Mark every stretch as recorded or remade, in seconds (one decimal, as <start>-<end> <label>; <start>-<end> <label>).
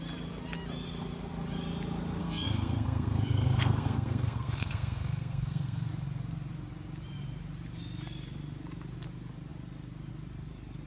0.0-2.2 recorded; 2.2-5.9 remade; 5.9-10.9 recorded